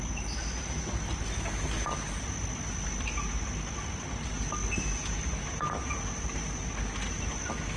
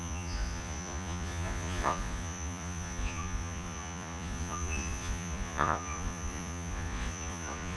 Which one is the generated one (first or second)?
second